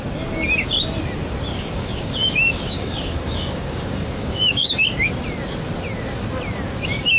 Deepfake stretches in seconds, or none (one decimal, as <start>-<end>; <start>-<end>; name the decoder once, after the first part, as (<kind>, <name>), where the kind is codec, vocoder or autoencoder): 1.5-5.1 (codec, DAC)